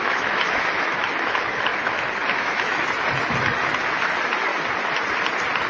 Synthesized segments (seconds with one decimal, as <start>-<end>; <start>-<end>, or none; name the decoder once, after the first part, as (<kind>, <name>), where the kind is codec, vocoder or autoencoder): 0.0-4.5 (autoencoder, DAC-VAE)